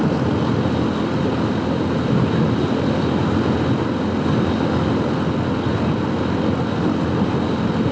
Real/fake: real